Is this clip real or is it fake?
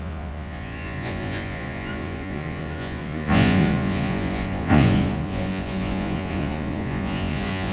fake